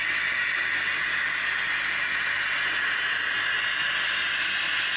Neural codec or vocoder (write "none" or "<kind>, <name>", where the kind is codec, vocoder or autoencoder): none